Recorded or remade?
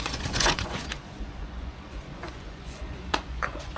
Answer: remade